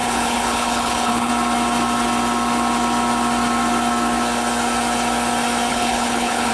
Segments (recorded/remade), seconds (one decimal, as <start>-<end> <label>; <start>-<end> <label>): 0.0-1.3 remade; 1.3-5.7 recorded; 5.7-6.5 remade